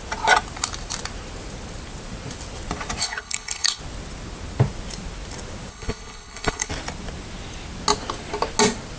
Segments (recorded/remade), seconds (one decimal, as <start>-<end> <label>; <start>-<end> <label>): 0.0-3.0 recorded; 3.0-3.8 remade; 3.8-5.7 recorded; 5.7-6.7 remade; 6.7-9.0 recorded